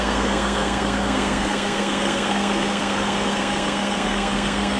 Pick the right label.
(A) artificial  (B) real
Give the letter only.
A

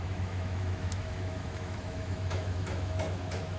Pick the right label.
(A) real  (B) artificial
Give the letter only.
B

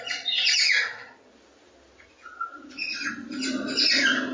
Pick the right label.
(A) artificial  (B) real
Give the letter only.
B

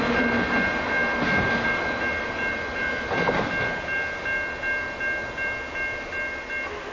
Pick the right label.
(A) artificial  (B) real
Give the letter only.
B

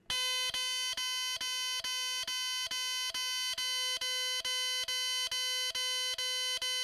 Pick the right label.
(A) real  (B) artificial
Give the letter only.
A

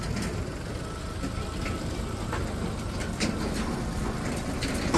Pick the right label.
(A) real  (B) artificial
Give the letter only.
A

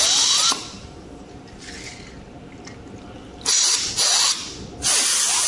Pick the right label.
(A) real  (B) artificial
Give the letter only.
A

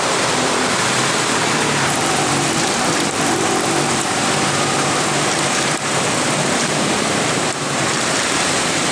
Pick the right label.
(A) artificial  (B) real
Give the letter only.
A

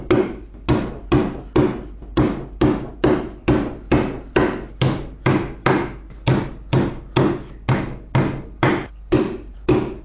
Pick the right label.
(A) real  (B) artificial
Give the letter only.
A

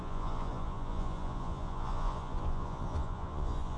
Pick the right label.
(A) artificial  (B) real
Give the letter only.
A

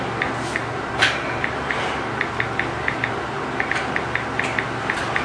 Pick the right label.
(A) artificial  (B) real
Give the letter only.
B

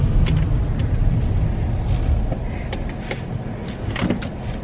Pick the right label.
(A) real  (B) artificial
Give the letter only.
A